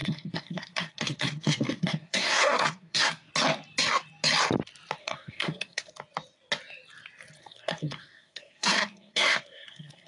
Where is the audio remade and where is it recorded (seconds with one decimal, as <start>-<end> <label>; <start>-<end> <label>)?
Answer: 0.0-3.3 remade; 3.3-5.0 recorded; 5.0-5.9 remade; 5.9-7.4 recorded; 7.4-10.1 remade